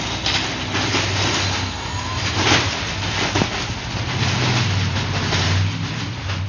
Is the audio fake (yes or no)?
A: no